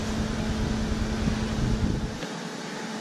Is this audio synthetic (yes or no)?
no